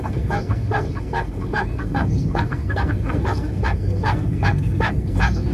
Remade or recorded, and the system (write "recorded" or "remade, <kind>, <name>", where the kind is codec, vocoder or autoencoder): remade, codec, SNAC